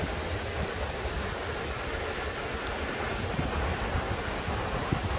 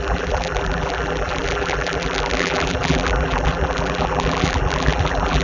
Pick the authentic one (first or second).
first